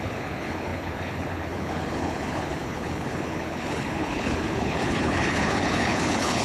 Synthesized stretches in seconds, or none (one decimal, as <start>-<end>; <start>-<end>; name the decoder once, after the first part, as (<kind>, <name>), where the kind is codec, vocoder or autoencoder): 0.0-6.4 (codec, HILCodec)